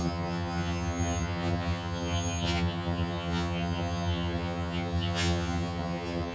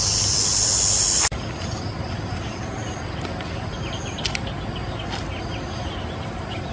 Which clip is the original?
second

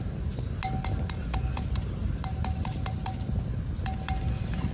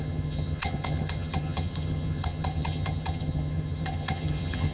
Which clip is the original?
first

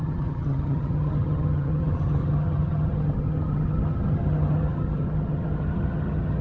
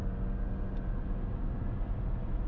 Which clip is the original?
second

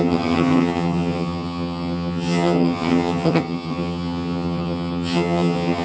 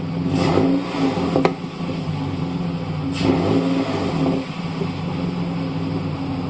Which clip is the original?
second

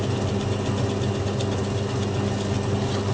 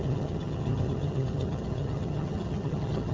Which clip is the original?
first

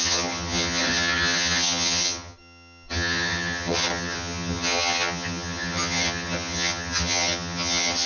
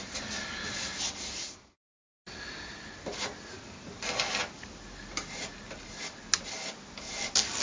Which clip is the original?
second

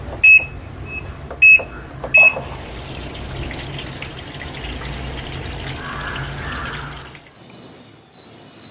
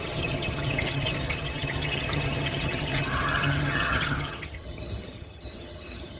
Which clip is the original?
first